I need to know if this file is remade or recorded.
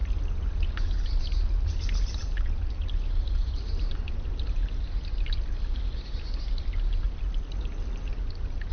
recorded